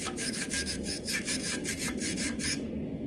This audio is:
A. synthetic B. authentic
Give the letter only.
A